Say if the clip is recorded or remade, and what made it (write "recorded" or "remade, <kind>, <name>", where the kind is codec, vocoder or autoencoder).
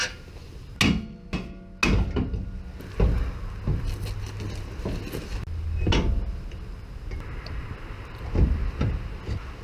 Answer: recorded